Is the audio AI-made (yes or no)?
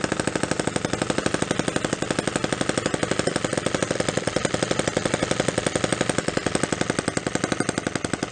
no